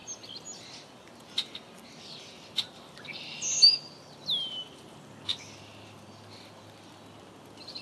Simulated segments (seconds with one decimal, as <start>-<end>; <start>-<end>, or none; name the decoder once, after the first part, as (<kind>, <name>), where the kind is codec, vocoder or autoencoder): none